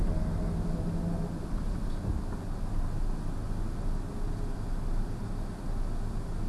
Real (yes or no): yes